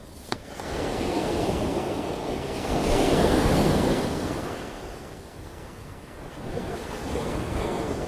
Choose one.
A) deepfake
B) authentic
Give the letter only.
A